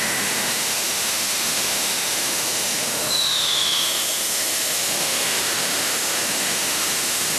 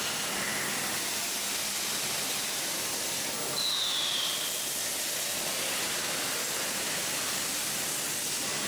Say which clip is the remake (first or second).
first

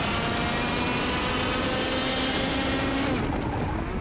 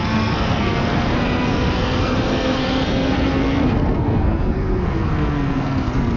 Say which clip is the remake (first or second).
second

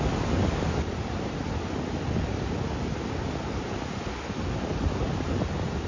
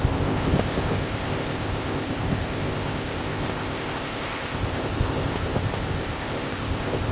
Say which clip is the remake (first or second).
second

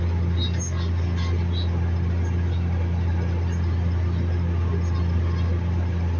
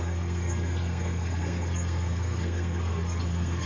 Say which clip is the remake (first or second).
second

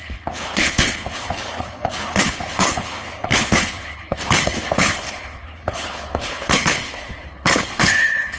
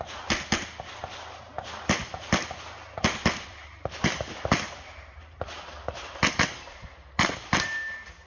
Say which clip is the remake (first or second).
first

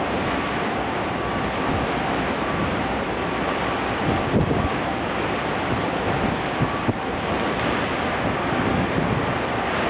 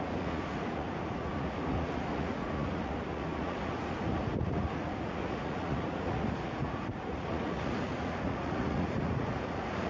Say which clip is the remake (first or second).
second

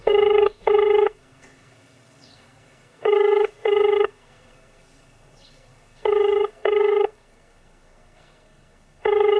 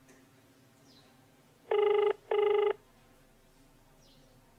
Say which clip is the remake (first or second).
first